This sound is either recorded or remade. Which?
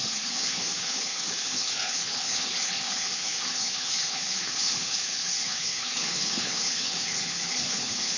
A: remade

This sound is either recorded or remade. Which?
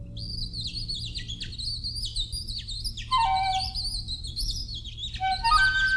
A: recorded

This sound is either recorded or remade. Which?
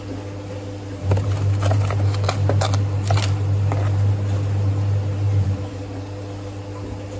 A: recorded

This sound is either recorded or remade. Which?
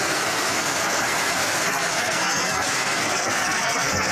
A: remade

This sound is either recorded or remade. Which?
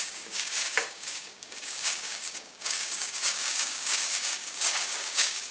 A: remade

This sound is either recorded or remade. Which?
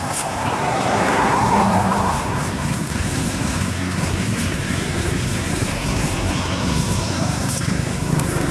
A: remade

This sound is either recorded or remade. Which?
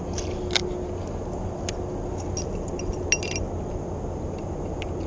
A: recorded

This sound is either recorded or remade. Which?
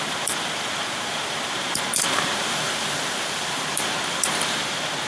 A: remade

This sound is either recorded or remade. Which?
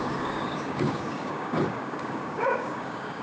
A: remade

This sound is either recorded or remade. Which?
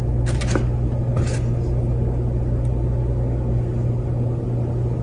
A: recorded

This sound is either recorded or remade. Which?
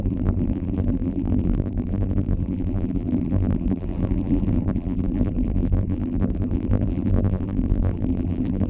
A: remade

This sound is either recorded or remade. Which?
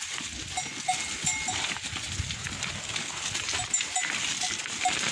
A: recorded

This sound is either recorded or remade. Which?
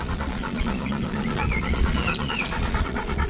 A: remade